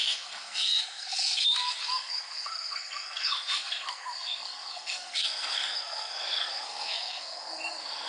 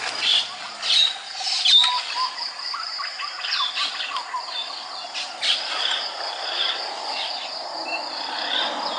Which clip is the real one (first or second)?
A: second